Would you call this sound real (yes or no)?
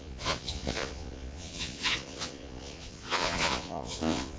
no